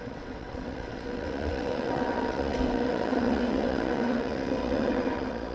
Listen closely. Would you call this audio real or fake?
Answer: fake